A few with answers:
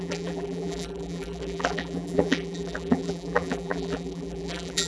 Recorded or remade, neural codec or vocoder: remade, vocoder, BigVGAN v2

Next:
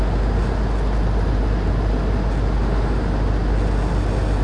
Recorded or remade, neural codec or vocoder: recorded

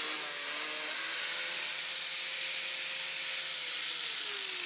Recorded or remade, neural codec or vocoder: recorded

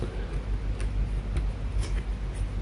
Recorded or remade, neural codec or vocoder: recorded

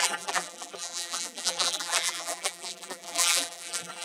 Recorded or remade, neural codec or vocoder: remade, vocoder, BigVGAN v2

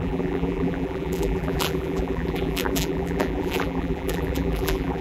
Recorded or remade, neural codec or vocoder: remade, vocoder, BigVGAN v2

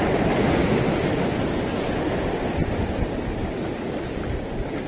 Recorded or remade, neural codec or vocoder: recorded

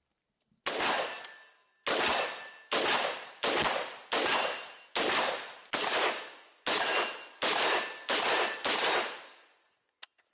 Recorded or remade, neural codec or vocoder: recorded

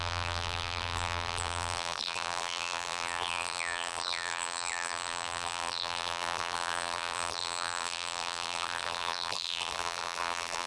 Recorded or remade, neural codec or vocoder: remade, vocoder, BigVGAN v2